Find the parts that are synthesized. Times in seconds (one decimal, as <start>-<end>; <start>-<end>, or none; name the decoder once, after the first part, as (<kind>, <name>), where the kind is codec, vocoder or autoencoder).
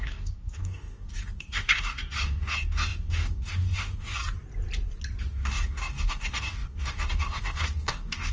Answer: 0.0-4.2 (codec, DAC); 5.2-8.3